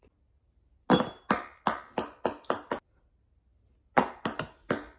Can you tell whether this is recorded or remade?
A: recorded